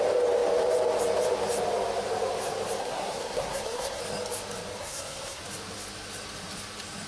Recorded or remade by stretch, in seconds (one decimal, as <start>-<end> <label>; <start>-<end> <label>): 0.0-2.8 recorded; 2.8-4.0 remade; 4.0-4.8 recorded; 4.8-5.4 remade; 5.4-7.1 recorded